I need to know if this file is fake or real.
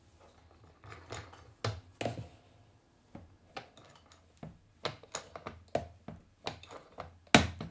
real